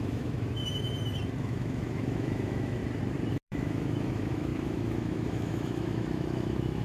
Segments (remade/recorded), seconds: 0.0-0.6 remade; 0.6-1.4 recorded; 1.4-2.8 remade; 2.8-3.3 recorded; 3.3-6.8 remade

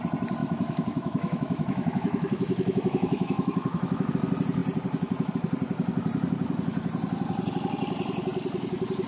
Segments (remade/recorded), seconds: 0.0-0.4 recorded; 0.4-4.1 remade; 4.1-9.1 recorded

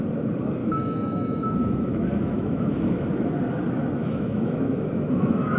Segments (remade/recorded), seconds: 0.0-0.6 recorded; 0.6-3.1 remade; 3.1-4.0 recorded; 4.0-5.6 remade

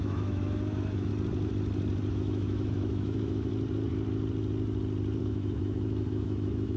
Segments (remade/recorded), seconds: 0.0-1.1 remade; 1.1-2.1 recorded; 2.1-3.5 remade; 3.5-5.2 recorded; 5.2-6.8 remade

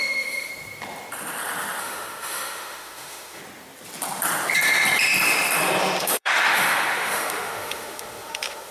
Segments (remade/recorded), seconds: 0.0-0.5 remade; 0.5-1.8 recorded; 1.8-3.4 remade; 3.4-6.0 recorded; 6.0-8.7 remade